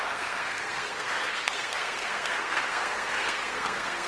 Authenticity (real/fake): fake